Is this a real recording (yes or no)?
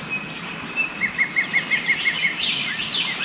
no